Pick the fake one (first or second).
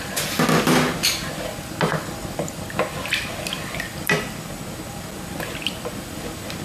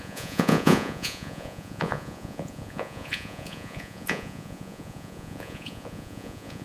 second